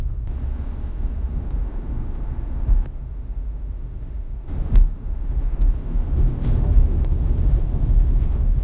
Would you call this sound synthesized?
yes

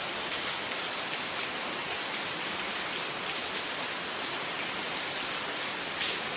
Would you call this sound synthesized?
no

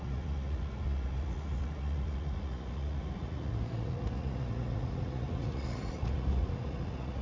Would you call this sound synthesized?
yes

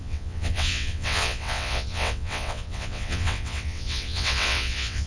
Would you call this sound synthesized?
yes